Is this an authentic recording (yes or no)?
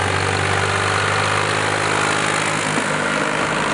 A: yes